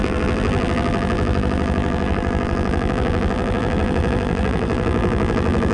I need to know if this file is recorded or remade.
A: remade